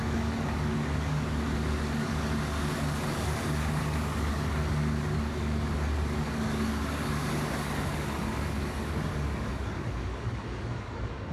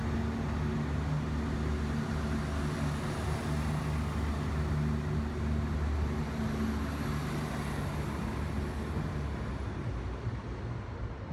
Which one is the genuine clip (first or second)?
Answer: second